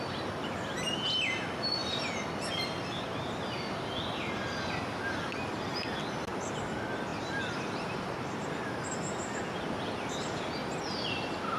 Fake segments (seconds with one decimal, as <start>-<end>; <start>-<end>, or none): none